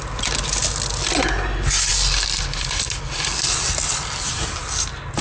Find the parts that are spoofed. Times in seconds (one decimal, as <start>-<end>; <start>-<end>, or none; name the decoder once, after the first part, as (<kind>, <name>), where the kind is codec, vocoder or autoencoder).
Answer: none